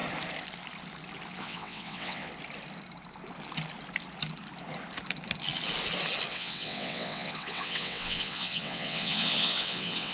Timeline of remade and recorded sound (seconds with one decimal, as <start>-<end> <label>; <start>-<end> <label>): 0.0-1.4 recorded; 1.4-2.3 remade; 2.3-6.3 recorded; 6.3-10.1 remade